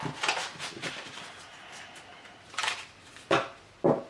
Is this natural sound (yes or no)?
yes